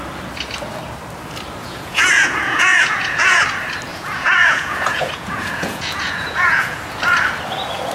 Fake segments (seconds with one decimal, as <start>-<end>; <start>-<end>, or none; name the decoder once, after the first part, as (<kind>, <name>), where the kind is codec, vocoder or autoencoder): 1.6-3.4 (vocoder, Vocos); 3.9-6.8